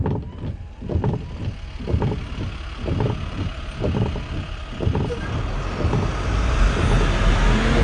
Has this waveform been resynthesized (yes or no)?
no